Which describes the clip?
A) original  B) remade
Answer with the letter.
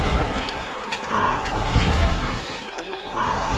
B